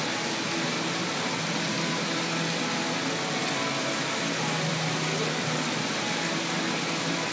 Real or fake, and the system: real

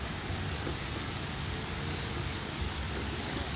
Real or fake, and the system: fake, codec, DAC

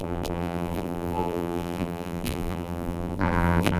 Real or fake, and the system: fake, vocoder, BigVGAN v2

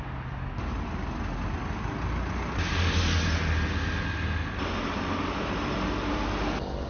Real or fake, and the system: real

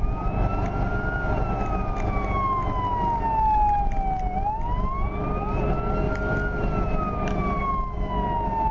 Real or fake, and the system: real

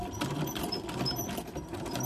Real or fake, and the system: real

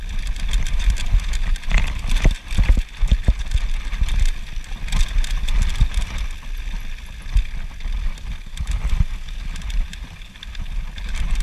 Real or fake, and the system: real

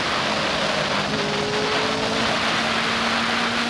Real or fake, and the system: real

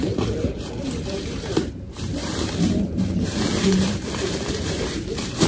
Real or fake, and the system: fake, vocoder, BigVGAN v2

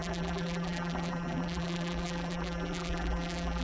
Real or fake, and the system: fake, vocoder, BigVGAN v2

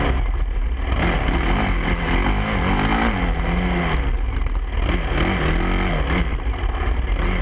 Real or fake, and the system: real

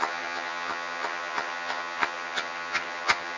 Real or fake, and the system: fake, vocoder, HiFi-GAN